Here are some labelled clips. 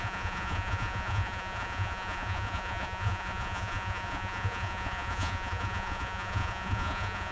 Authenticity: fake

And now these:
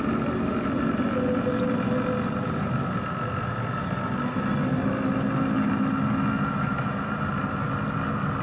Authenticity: real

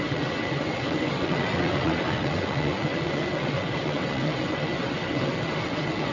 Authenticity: fake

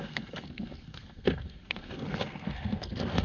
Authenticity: fake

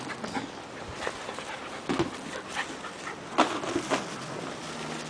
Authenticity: real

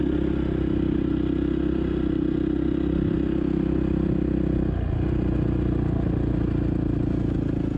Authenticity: real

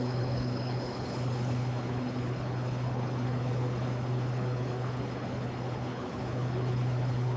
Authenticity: fake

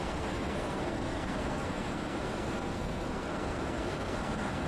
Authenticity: fake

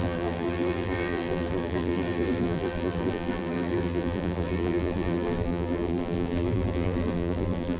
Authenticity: fake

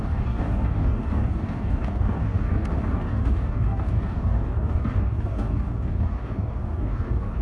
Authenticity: fake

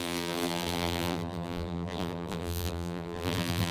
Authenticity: fake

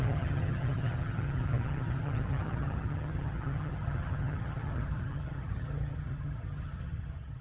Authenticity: fake